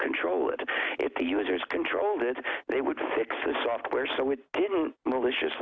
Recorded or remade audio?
recorded